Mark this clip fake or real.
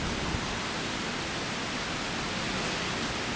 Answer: real